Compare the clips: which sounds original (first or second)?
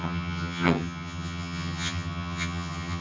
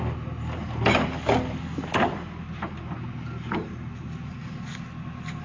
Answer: second